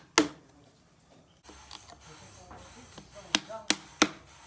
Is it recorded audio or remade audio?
recorded